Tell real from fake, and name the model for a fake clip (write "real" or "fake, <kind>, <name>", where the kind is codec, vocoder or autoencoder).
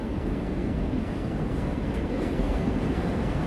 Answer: fake, codec, SNAC